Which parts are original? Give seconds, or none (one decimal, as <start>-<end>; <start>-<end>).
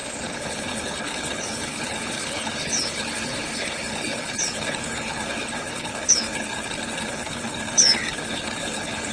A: none